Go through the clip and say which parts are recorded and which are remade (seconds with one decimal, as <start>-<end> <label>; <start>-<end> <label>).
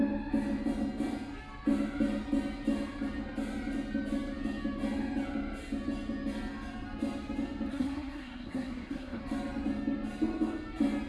0.0-7.7 recorded; 7.7-9.2 remade; 9.2-11.1 recorded